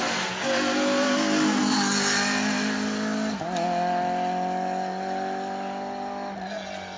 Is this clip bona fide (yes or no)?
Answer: yes